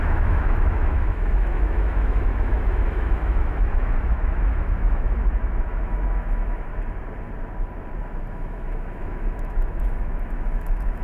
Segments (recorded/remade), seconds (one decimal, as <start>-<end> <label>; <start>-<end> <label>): 0.0-6.7 remade; 6.7-8.3 recorded; 8.3-11.0 remade